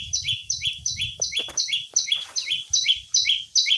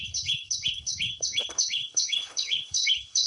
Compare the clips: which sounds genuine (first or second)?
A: first